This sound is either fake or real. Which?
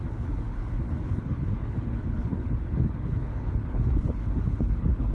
fake